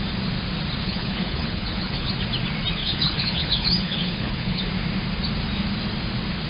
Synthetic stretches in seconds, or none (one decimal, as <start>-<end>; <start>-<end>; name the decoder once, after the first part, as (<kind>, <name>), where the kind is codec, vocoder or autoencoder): 0.8-2.1 (codec, HILCodec); 2.8-4.6